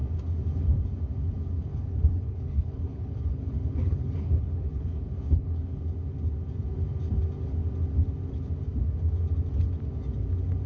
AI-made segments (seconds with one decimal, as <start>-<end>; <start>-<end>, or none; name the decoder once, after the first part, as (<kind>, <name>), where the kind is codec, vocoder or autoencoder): 1.7-5.8 (codec, HILCodec)